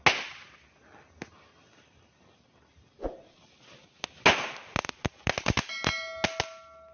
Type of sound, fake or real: real